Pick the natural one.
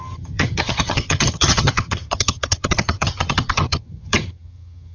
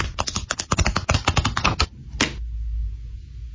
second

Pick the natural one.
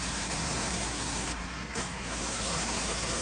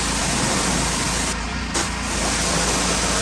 second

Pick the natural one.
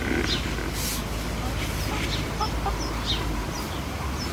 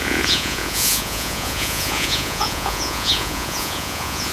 first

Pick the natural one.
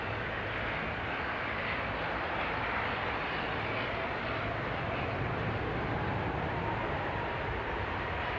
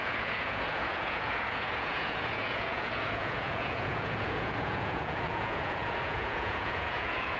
first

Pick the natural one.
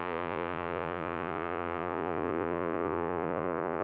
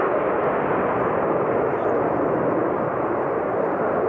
second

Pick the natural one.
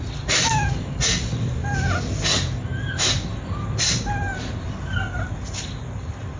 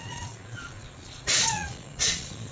first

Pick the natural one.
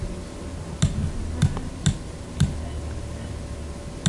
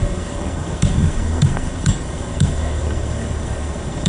first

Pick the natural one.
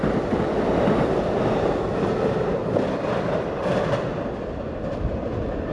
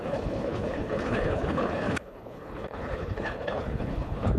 first